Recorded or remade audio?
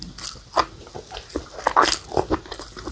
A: recorded